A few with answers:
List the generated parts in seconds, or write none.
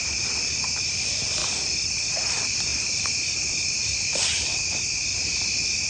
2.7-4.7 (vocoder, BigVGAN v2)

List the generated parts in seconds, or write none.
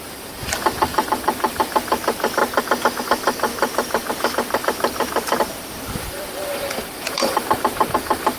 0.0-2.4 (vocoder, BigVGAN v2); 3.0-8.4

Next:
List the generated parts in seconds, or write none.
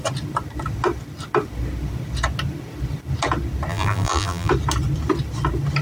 3.7-4.5 (vocoder, BigVGAN v2)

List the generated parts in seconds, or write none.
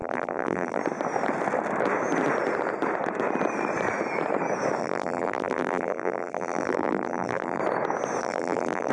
0.0-0.8 (vocoder, BigVGAN v2); 4.8-7.6; 8.2-8.9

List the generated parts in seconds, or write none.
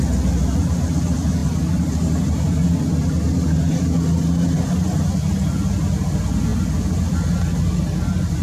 6.5-7.3 (vocoder, BigVGAN v2)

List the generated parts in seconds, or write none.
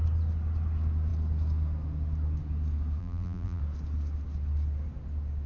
3.0-3.6 (vocoder, BigVGAN v2)